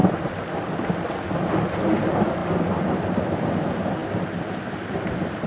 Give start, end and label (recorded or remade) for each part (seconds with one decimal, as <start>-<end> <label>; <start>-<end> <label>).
0.0-2.4 recorded; 2.4-3.1 remade; 3.1-5.5 recorded